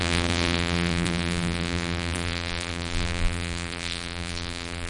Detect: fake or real fake